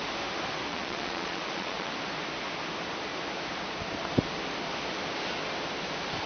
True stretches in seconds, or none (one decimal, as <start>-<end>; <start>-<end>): 0.0-0.7; 1.9-6.3